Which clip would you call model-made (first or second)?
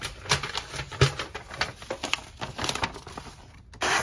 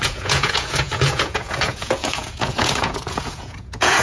second